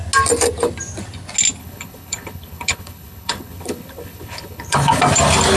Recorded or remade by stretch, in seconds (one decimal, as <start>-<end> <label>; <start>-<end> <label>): 0.0-1.6 recorded; 1.6-5.0 remade; 5.0-5.6 recorded